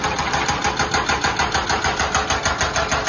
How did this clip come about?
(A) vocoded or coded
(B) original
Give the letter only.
B